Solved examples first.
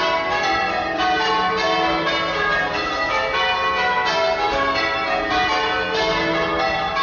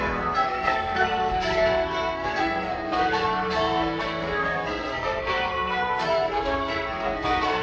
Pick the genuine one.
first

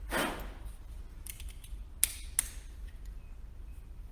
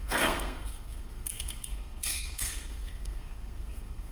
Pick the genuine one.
first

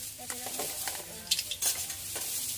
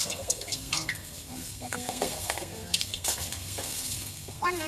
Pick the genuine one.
first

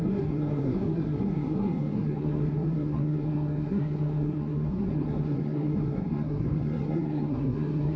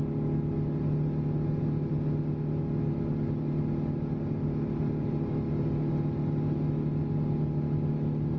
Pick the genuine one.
second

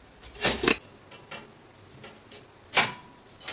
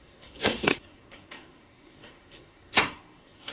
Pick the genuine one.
first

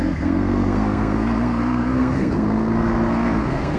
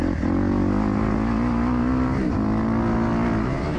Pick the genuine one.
second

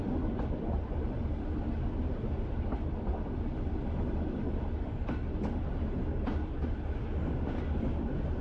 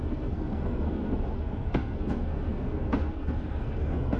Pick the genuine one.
first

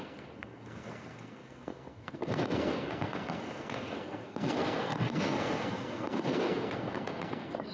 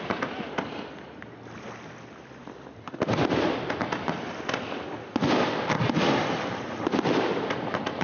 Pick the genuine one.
second